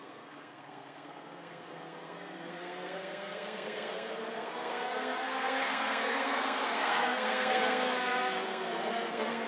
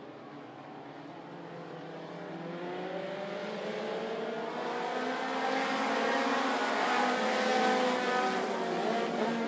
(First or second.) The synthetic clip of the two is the first